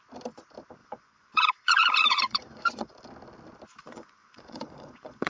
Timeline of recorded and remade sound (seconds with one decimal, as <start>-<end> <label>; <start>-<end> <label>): 0.0-0.8 recorded; 0.8-2.9 remade; 2.9-3.8 recorded; 3.8-5.3 remade